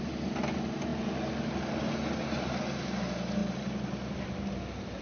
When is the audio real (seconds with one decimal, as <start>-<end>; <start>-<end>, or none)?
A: 0.0-5.0